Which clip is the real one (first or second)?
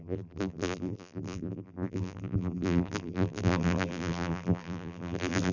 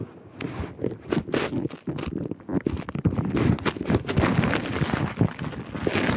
second